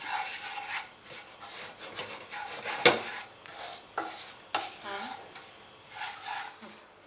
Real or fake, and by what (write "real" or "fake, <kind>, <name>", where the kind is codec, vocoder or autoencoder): real